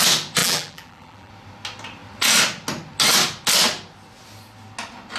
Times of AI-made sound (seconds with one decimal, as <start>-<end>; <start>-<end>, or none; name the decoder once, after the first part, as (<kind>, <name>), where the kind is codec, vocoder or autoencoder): 0.4-1.3 (vocoder, BigVGAN v2)